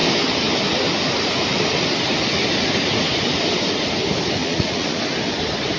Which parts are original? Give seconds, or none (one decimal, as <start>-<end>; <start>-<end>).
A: 0.0-4.4; 5.0-5.8